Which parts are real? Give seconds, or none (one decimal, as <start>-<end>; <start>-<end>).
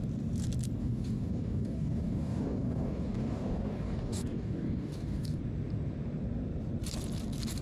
0.0-0.8; 5.4-7.6